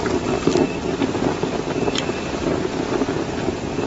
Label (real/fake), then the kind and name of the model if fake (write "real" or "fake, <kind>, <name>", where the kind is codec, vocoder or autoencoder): real